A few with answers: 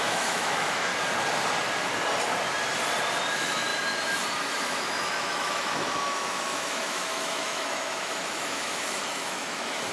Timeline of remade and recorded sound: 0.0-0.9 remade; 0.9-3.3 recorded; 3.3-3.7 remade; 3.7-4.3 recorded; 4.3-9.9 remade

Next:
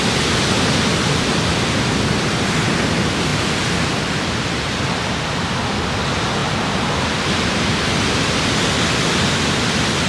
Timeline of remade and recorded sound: 0.0-10.1 recorded

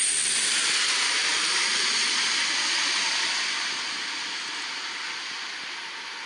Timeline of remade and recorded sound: 0.0-6.3 recorded

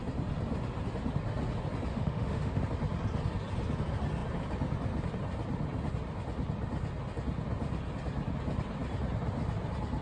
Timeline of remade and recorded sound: 0.0-1.9 recorded; 1.9-2.6 remade; 2.6-10.0 recorded

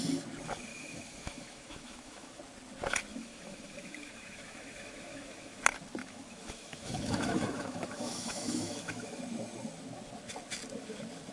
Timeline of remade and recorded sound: 0.0-0.7 recorded; 0.7-2.4 remade; 2.4-3.1 recorded; 3.1-5.6 remade; 5.6-6.0 recorded; 6.0-9.2 remade; 9.2-11.3 recorded

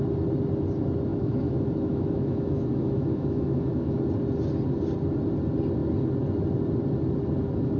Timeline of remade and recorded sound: 0.0-1.1 recorded; 1.1-4.0 remade; 4.0-7.8 recorded

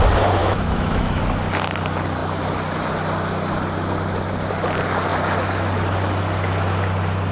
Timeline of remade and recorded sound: 0.0-0.4 recorded; 0.4-1.2 remade; 1.2-7.3 recorded

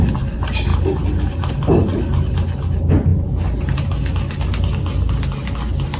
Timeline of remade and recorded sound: 0.0-6.0 recorded